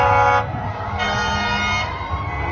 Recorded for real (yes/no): yes